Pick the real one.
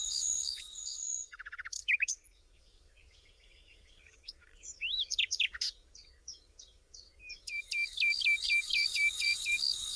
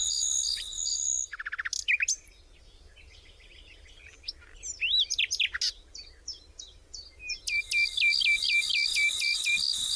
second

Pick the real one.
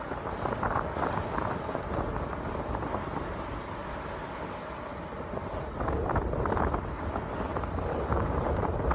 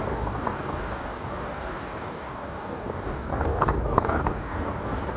first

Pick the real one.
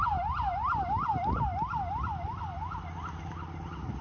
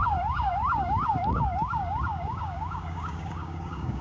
first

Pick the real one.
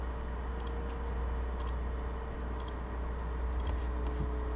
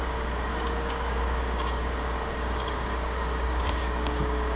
first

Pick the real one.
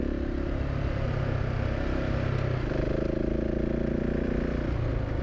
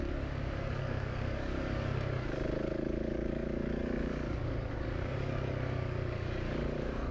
first